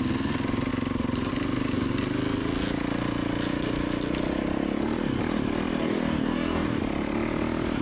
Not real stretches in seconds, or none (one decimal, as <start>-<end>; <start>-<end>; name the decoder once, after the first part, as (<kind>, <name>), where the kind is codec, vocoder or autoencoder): 5.8-6.8 (codec, DAC)